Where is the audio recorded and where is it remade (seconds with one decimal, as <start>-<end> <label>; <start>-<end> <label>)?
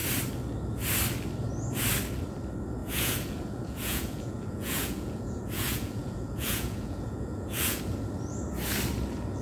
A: 0.0-2.8 recorded; 2.8-7.8 remade; 7.8-9.4 recorded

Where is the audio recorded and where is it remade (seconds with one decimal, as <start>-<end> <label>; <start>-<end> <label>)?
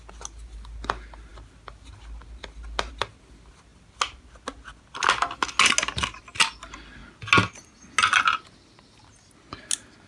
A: 0.0-10.1 recorded